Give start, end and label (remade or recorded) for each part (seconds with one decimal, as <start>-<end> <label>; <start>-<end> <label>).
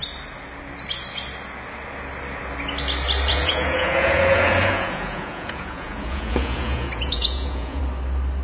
0.0-3.3 recorded; 3.3-7.8 remade; 7.8-8.4 recorded